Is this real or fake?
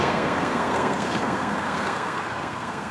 fake